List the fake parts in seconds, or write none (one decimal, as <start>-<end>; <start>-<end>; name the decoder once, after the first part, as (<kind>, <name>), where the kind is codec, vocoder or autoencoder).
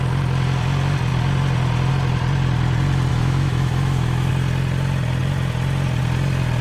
3.1-4.3 (autoencoder, DAC-VAE)